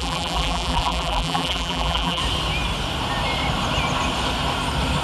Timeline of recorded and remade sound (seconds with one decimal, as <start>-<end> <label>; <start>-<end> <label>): 0.0-2.2 remade; 2.2-5.0 recorded